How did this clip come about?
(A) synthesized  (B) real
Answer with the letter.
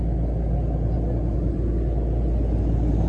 B